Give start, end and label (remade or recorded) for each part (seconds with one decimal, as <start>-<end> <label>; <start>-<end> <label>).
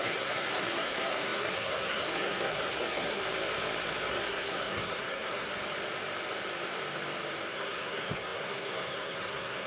0.0-3.2 remade; 3.2-4.1 recorded; 4.1-5.5 remade; 5.5-7.5 recorded; 7.5-9.7 remade